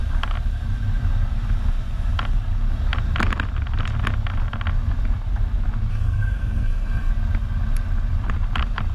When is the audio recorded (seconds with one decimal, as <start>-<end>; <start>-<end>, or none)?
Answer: 0.0-5.9; 7.1-8.9